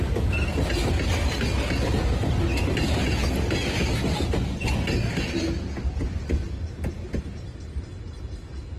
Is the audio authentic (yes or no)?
yes